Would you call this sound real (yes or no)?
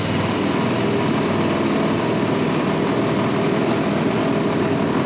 yes